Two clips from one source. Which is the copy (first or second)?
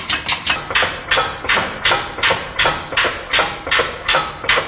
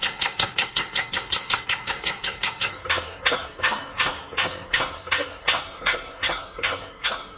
second